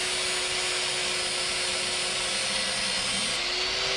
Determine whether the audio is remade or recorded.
recorded